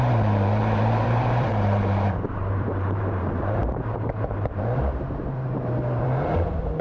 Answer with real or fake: fake